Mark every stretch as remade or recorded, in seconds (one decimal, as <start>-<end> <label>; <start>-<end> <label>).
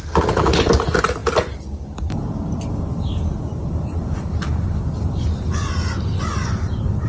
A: 0.0-7.1 remade